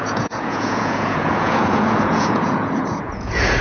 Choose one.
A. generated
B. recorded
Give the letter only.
A